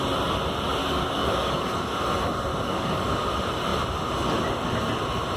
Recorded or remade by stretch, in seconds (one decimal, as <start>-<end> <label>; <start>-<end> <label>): 0.0-0.8 recorded; 0.8-2.0 remade; 2.0-2.5 recorded; 2.5-3.2 remade; 3.2-5.4 recorded